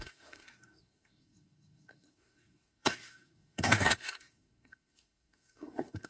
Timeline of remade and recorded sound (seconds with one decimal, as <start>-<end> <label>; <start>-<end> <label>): 0.0-6.1 remade